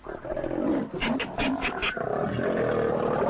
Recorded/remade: recorded